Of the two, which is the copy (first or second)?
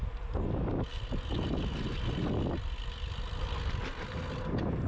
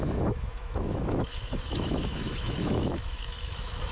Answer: second